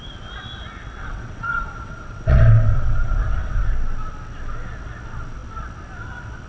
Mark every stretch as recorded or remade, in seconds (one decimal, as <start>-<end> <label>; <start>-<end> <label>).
0.0-1.0 recorded; 1.0-3.7 remade; 3.7-6.5 recorded